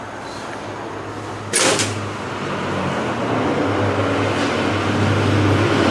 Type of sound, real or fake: real